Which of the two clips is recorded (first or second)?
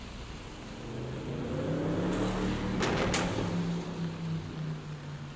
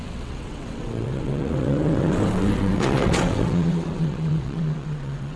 first